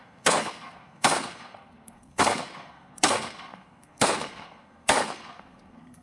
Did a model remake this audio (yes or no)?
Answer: yes